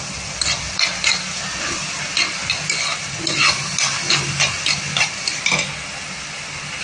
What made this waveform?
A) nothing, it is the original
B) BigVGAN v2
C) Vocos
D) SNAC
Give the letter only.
A